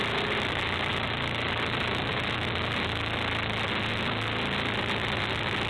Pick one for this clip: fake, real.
real